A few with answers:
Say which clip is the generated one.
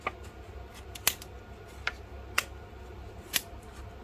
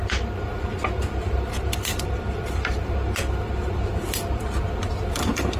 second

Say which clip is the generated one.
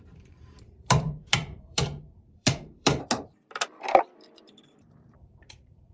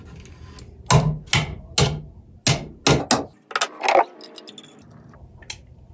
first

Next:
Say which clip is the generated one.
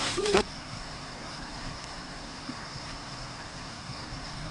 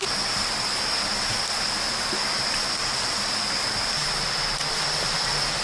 first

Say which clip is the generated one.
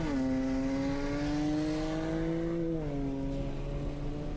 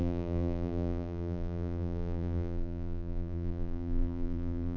second